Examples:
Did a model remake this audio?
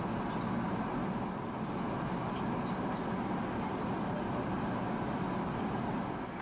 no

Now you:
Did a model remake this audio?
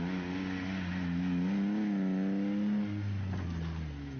no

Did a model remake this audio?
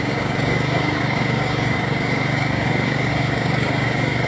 yes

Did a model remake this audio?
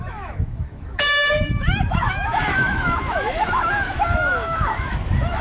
yes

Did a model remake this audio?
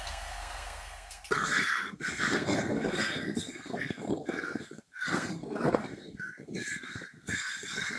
yes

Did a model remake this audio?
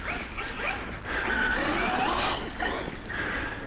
no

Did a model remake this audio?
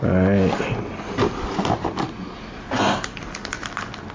no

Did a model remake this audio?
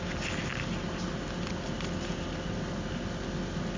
no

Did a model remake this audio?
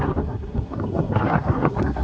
yes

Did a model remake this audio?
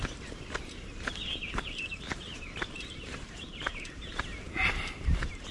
yes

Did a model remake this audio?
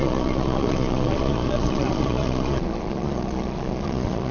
yes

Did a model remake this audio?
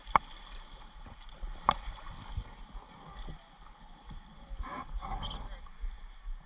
no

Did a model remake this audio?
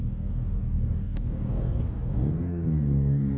yes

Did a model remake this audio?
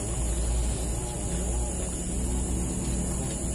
no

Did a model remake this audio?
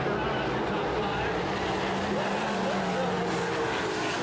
no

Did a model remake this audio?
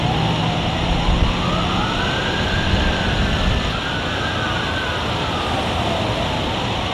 no